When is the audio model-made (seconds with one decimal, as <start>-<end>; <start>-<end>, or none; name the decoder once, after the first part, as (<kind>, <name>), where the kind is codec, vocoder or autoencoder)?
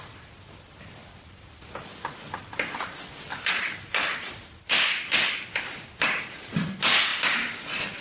0.0-7.1 (vocoder, BigVGAN v2)